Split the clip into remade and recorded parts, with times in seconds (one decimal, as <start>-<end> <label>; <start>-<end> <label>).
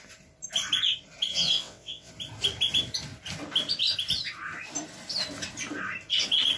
0.0-1.3 recorded; 1.3-2.1 remade; 2.1-6.6 recorded